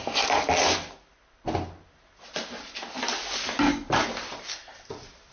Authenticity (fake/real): real